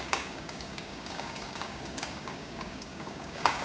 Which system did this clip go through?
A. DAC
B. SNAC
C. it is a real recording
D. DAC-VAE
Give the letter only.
A